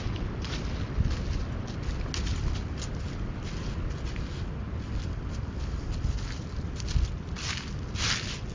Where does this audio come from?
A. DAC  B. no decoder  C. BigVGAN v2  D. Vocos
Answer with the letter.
B